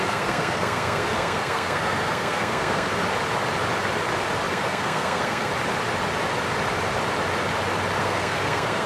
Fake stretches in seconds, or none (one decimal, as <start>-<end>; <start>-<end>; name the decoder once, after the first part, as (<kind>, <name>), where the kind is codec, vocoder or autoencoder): 0.0-2.9 (codec, SNAC); 4.5-5.5; 8.0-8.9